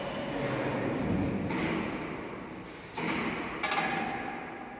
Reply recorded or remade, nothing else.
recorded